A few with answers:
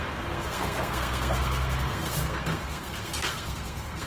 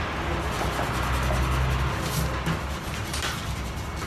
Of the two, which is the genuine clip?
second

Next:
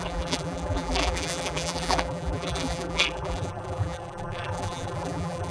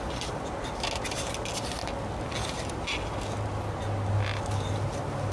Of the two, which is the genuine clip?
second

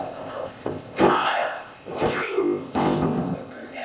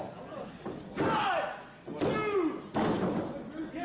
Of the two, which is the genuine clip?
second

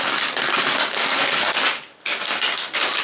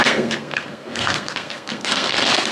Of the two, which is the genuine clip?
first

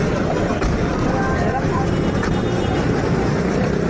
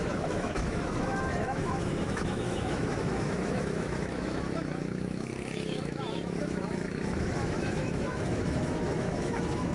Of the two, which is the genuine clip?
first